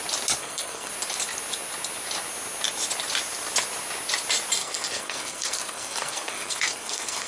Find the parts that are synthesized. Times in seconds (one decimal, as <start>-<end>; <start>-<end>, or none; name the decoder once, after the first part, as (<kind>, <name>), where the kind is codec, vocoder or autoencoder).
0.4-0.9 (codec, SNAC); 4.6-7.3